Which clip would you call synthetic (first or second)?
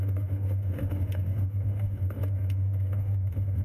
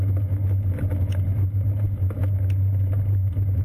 first